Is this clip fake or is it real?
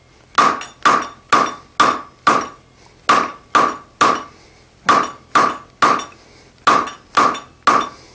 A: real